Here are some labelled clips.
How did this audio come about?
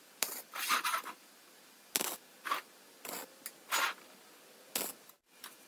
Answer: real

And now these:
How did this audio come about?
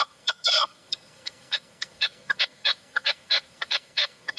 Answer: fake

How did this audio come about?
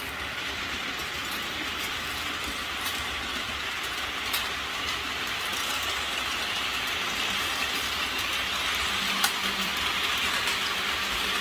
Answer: fake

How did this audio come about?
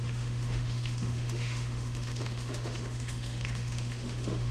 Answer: fake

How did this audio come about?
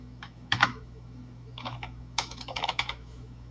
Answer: fake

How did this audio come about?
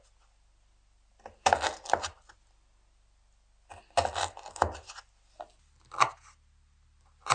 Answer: real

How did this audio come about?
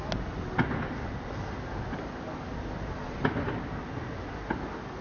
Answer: real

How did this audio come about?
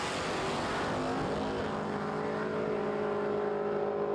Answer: real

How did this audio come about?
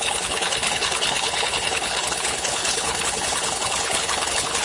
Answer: fake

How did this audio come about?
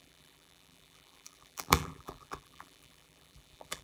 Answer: fake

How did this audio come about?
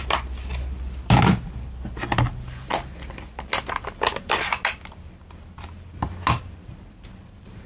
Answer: fake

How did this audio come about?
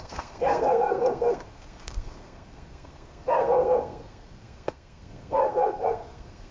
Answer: fake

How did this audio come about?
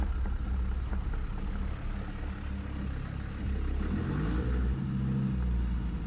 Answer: real